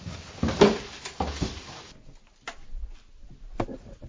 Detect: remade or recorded recorded